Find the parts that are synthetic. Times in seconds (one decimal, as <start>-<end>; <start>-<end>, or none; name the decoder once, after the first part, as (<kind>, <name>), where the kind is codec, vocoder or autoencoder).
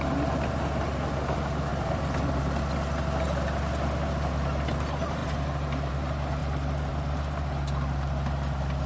1.7-2.3 (vocoder, BigVGAN v2); 6.4-7.1